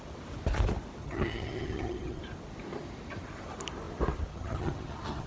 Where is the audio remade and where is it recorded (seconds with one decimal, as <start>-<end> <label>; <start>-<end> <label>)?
0.0-1.0 recorded; 1.0-2.2 remade; 2.2-4.3 recorded; 4.3-5.3 remade